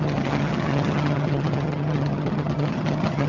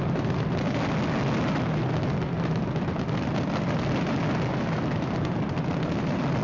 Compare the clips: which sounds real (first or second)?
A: second